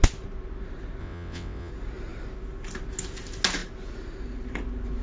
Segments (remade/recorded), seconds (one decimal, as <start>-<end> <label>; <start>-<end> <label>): 0.0-1.0 recorded; 1.0-1.7 remade; 1.7-5.0 recorded

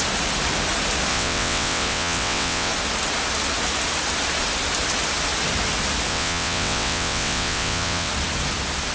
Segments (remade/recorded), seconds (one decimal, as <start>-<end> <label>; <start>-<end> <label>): 0.0-1.1 recorded; 1.1-2.7 remade; 2.7-6.1 recorded; 6.1-8.1 remade; 8.1-8.9 recorded

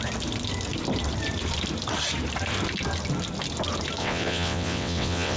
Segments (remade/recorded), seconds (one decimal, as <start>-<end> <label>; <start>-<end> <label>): 0.0-4.0 recorded; 4.0-5.4 remade

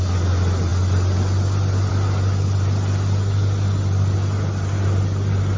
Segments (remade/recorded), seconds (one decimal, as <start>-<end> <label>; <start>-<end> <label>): 0.0-5.6 recorded

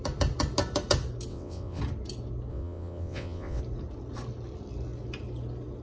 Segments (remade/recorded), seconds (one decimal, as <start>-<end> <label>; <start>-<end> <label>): 0.0-1.3 recorded; 1.3-1.8 remade; 1.8-2.5 recorded; 2.5-3.6 remade; 3.6-5.8 recorded

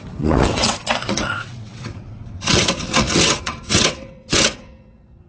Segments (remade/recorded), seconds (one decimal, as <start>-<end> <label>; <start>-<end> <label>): 0.0-5.3 remade

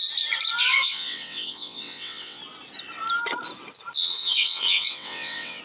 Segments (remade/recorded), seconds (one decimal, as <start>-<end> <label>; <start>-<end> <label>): 0.0-0.7 recorded; 0.7-2.4 remade; 2.4-4.0 recorded; 4.0-5.6 remade